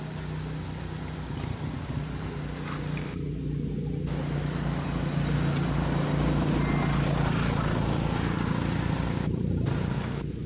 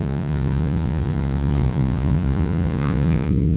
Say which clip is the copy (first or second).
second